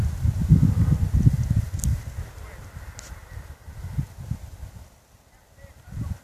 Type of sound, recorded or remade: recorded